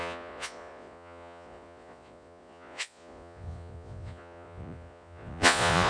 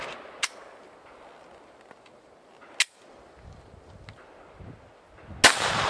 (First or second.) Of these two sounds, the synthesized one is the first